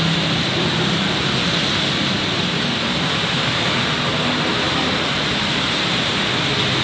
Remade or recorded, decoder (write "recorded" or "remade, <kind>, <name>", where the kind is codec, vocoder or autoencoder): recorded